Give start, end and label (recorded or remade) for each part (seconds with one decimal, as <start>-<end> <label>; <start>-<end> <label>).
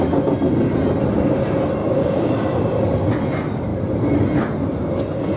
0.0-1.8 recorded; 1.8-2.3 remade; 2.3-5.4 recorded